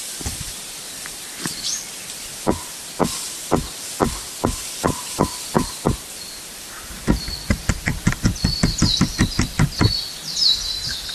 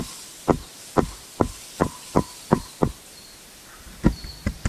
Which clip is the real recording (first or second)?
second